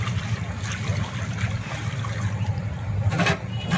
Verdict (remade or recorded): recorded